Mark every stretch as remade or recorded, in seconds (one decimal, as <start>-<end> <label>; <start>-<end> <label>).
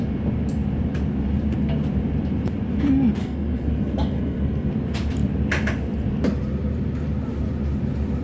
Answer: 0.0-3.2 recorded; 3.2-4.7 remade; 4.7-8.2 recorded